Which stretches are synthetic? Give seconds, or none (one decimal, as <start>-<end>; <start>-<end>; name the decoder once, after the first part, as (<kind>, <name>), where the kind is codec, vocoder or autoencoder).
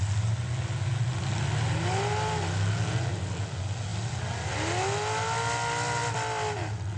none